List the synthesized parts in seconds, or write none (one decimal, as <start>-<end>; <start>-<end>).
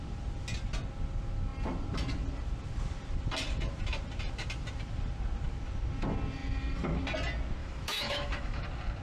7.6-8.6